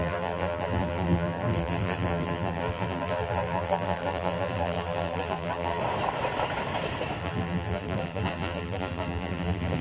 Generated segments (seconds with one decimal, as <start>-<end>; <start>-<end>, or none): 0.0-5.8; 7.2-9.8